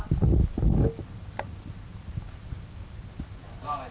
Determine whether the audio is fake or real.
real